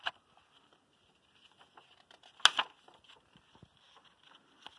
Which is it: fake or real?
real